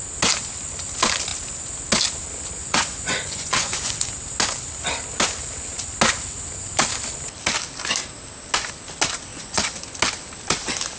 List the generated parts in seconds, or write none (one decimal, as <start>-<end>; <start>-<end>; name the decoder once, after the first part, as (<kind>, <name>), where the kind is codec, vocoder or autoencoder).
2.6-4.1 (vocoder, Vocos); 9.3-9.8